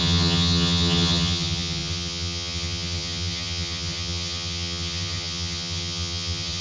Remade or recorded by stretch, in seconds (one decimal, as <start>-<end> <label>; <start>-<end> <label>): 0.0-6.6 remade